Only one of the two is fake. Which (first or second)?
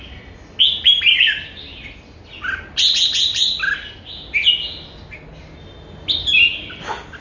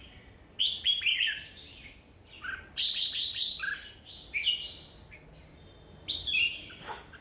second